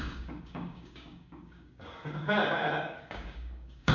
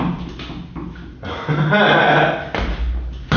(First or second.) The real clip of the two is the second